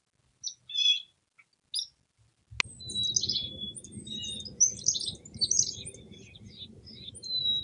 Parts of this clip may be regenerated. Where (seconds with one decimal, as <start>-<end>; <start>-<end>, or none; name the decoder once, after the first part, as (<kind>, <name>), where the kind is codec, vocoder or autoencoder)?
3.4-7.1 (vocoder, BigVGAN v2)